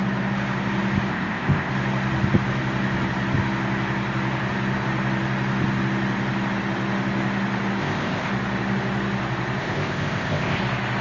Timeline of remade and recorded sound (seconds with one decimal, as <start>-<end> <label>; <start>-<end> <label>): 0.0-1.1 recorded; 1.1-1.7 remade; 1.7-7.8 recorded; 7.8-8.3 remade; 8.3-9.6 recorded; 9.6-10.6 remade; 10.6-11.0 recorded